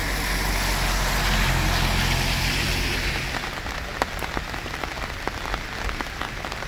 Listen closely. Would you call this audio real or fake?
real